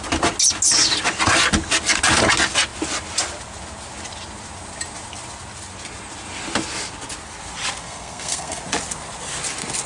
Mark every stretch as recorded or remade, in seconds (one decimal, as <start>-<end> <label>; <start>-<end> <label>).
0.0-7.8 recorded; 7.8-8.6 remade; 8.6-9.9 recorded